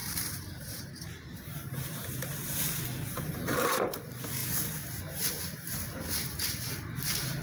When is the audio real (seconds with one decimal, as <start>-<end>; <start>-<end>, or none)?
none